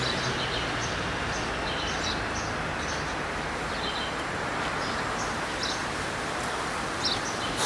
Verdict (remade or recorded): recorded